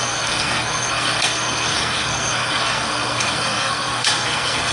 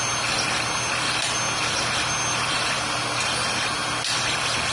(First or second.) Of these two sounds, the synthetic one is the first